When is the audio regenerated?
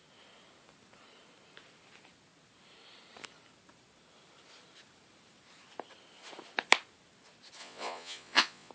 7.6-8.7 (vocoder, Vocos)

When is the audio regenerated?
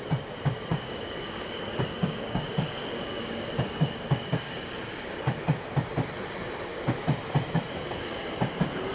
0.7-5.1 (codec, DAC)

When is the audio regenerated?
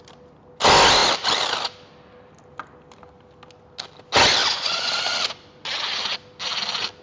4.4-4.9 (vocoder, Vocos)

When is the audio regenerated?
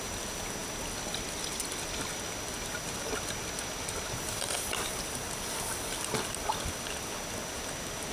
none